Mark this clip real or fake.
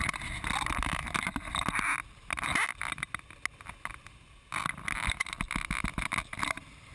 real